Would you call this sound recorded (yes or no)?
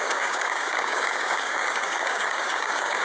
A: no